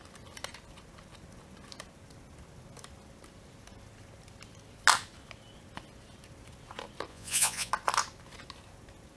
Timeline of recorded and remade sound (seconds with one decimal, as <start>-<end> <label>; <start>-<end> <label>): 0.0-7.1 recorded; 7.1-7.7 remade; 7.7-9.2 recorded